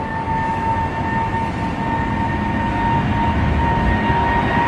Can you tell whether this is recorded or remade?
recorded